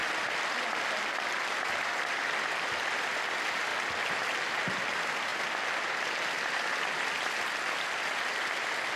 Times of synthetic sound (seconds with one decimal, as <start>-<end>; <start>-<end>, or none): none